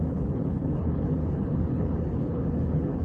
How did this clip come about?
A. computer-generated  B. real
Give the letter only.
A